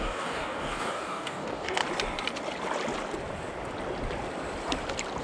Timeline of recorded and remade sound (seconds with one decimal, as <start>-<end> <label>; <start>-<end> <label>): 0.0-1.8 remade; 1.8-5.2 recorded